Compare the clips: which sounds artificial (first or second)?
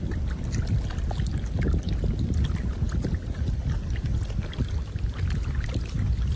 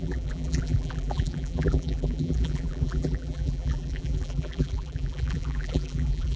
second